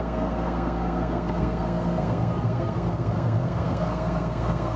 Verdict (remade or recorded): remade